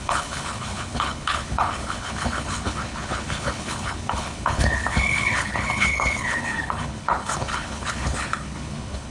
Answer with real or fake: fake